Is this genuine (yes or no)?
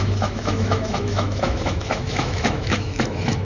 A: no